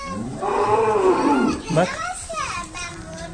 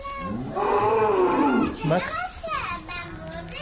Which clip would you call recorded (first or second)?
second